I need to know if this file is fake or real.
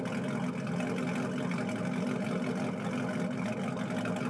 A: real